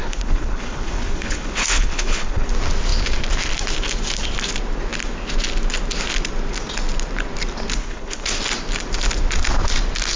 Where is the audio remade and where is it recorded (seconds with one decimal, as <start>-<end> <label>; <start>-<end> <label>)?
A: 0.0-2.5 remade; 2.5-7.8 recorded; 7.8-8.4 remade; 8.4-10.2 recorded